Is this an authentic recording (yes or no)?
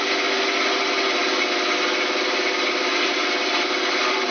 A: yes